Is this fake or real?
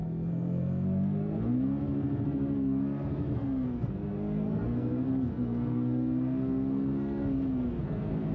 fake